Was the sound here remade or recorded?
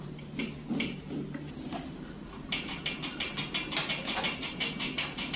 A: recorded